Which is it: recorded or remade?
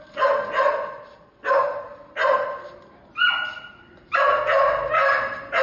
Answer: recorded